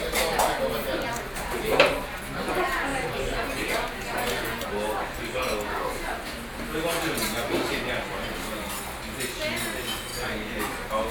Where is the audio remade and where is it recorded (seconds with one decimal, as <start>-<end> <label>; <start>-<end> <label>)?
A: 0.0-11.1 recorded